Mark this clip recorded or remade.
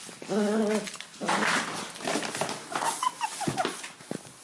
recorded